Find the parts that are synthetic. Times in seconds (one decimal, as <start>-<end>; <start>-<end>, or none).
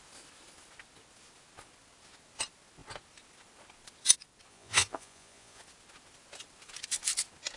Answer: 4.5-5.6